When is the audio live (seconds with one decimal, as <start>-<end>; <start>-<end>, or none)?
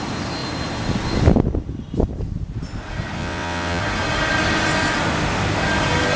0.0-3.2; 3.8-6.2